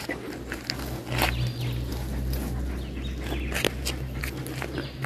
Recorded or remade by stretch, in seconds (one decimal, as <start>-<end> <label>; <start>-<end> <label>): 0.0-5.1 recorded